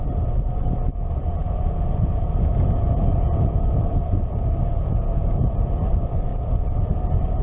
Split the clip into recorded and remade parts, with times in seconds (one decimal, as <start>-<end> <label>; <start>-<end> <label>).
0.0-0.9 recorded; 0.9-5.3 remade; 5.3-6.3 recorded; 6.3-7.0 remade; 7.0-7.4 recorded